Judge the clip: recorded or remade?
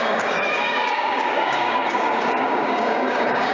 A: remade